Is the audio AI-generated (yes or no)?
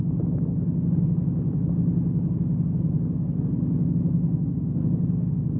no